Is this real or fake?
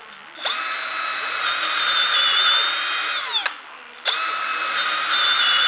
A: real